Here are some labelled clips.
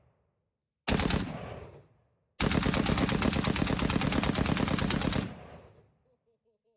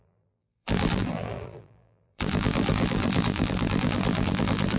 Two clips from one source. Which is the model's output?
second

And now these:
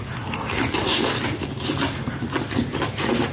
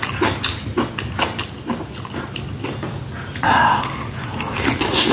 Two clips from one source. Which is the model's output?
first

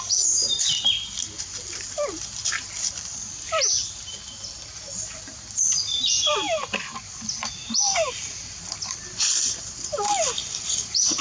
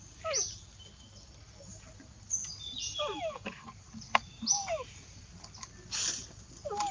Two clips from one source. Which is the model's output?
first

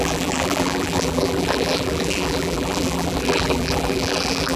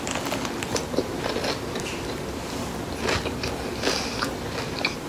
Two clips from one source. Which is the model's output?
first